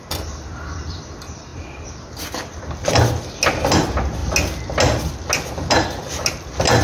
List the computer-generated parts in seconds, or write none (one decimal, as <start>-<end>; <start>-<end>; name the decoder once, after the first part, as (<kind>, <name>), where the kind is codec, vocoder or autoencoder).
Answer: none